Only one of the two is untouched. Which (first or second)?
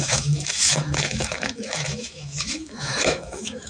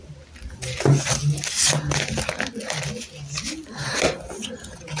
second